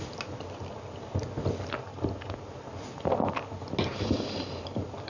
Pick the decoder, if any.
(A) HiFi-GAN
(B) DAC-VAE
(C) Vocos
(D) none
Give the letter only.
D